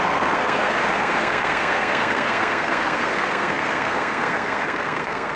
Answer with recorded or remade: remade